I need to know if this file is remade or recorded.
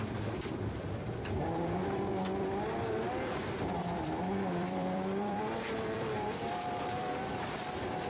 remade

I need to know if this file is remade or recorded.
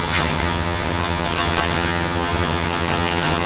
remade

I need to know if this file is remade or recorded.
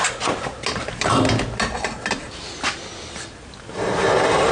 recorded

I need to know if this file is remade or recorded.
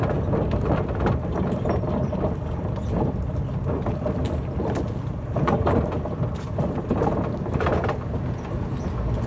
recorded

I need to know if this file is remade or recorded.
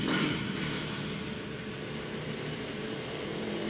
remade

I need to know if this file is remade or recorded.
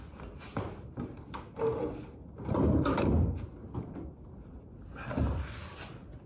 recorded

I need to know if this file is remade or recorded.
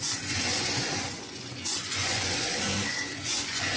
remade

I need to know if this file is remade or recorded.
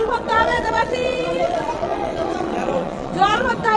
remade